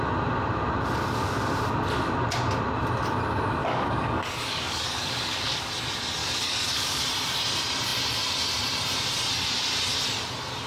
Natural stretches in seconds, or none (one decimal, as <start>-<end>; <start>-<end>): 0.0-3.6; 5.7-6.2; 7.0-10.7